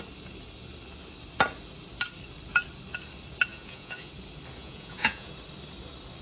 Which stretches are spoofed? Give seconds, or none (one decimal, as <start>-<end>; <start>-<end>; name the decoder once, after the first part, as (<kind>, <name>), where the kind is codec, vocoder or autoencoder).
3.5-4.1 (vocoder, Vocos); 4.6-5.3